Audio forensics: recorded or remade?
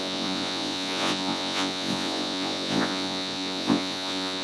remade